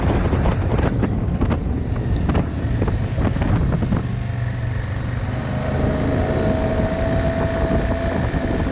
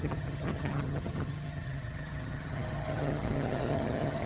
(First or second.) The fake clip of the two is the second